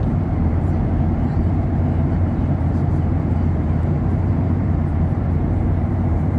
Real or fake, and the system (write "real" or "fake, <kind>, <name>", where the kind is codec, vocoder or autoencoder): fake, vocoder, BigVGAN v2